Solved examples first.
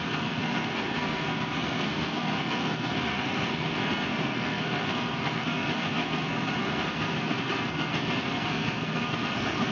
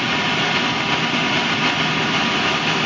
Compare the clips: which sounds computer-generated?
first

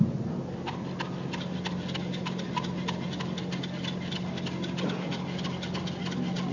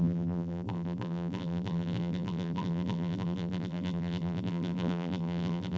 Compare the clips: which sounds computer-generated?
second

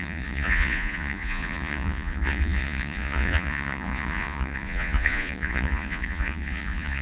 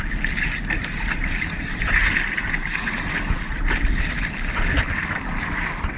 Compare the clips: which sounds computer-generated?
first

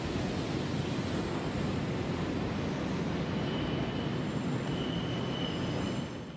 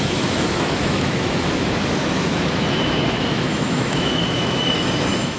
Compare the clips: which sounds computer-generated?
second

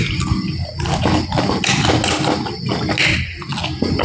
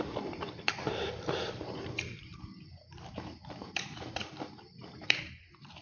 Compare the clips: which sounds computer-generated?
second